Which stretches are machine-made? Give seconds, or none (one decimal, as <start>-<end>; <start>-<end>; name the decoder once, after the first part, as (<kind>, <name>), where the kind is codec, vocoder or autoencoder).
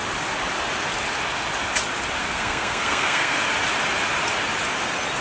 2.2-3.4 (codec, SNAC)